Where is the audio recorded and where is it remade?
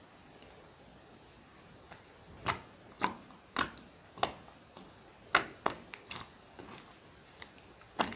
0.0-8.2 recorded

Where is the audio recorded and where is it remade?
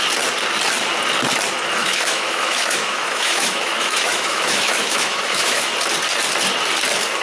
0.0-1.8 recorded; 1.8-5.7 remade; 5.7-7.2 recorded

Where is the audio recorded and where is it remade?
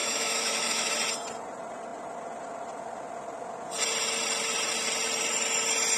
0.0-0.9 remade; 0.9-6.0 recorded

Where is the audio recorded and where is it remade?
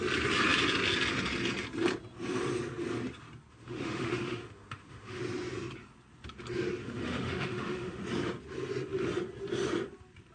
0.0-3.5 recorded; 3.5-5.2 remade; 5.2-6.8 recorded; 6.8-8.0 remade; 8.0-10.3 recorded